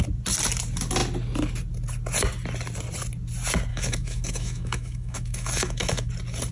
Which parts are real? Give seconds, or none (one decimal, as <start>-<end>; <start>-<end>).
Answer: 0.0-3.7; 6.1-6.5